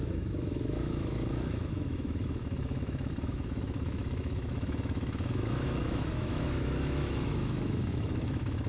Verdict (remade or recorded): remade